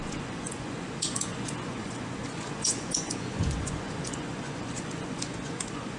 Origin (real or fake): fake